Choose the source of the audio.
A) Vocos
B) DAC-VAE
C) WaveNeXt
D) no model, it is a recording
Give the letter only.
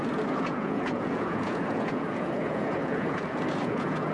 A